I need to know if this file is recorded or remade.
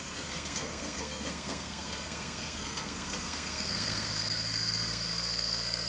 remade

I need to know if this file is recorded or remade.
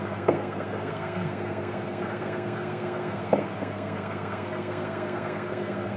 remade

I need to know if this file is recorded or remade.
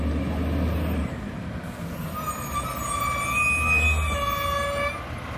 recorded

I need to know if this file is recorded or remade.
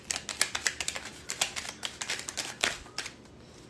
recorded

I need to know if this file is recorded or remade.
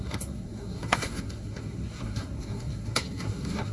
remade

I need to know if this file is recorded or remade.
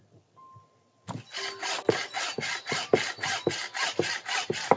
recorded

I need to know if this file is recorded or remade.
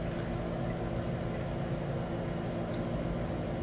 recorded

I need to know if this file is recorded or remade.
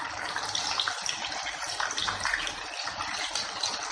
recorded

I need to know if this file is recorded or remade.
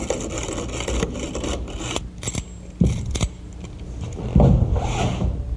recorded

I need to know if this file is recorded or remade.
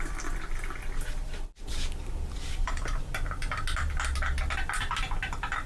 recorded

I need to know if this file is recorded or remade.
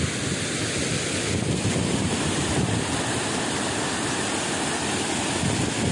recorded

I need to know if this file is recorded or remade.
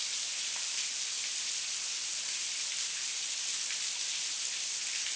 recorded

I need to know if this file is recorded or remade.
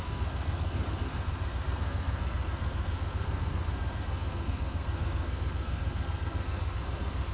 remade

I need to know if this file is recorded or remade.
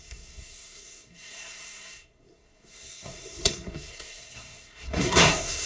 remade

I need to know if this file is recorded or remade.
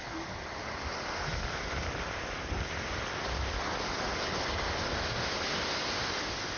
recorded